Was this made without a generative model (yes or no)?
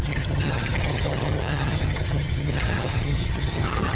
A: no